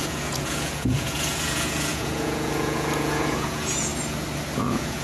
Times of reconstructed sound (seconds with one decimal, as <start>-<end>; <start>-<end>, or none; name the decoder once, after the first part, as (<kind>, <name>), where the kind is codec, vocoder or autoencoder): 0.0-3.9 (vocoder, Vocos); 4.6-5.0